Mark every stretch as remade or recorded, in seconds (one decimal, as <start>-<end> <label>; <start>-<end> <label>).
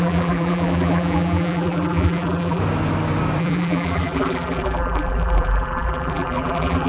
0.0-2.6 remade; 2.6-3.4 recorded; 3.4-6.9 remade